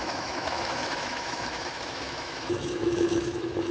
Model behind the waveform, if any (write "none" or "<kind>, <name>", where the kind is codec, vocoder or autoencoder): autoencoder, DAC-VAE